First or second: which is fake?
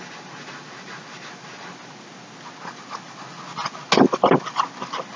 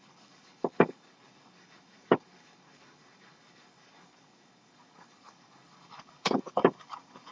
second